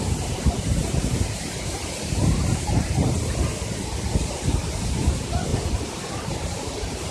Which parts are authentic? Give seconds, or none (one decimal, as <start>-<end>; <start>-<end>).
3.5-4.4; 5.5-6.1